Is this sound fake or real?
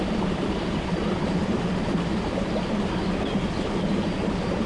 real